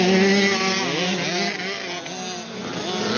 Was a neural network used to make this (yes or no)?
no